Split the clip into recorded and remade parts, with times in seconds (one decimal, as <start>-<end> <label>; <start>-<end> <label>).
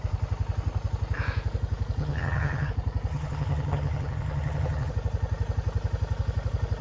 0.0-2.0 recorded; 2.0-2.7 remade; 2.7-3.1 recorded; 3.1-4.9 remade; 4.9-6.8 recorded